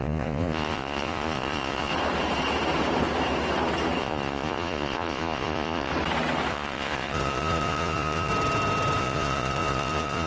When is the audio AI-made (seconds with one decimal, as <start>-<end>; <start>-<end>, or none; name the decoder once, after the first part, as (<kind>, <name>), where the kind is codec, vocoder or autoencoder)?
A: 0.0-1.9 (vocoder, Vocos); 4.0-5.9; 6.5-8.3; 9.0-10.3